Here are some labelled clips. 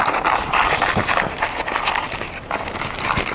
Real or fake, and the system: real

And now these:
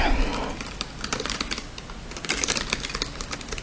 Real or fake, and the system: real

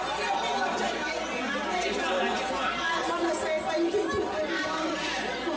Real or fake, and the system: real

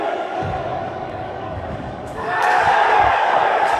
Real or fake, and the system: fake, codec, DAC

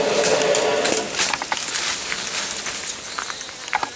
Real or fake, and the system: real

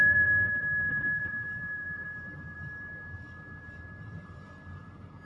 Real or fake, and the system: fake, vocoder, BigVGAN v2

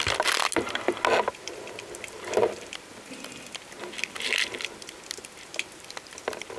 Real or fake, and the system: real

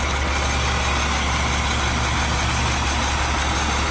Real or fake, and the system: real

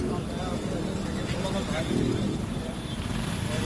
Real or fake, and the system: real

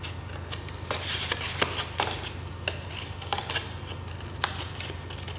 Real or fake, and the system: real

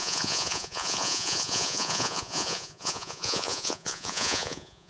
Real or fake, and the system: fake, vocoder, Vocos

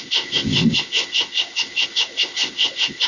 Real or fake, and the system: fake, codec, ZipCodec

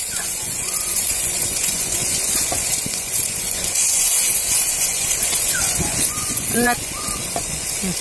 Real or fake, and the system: fake, vocoder, Vocos